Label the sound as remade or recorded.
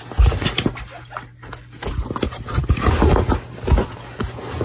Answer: recorded